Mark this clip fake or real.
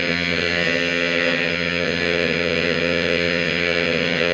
fake